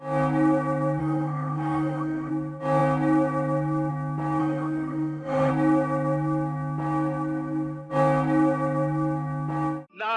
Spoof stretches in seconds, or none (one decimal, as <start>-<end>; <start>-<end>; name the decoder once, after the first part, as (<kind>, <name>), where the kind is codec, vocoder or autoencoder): 1.0-2.3 (autoencoder, DAC-VAE); 4.4-5.5